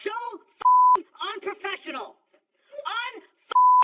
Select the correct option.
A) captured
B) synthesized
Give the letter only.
A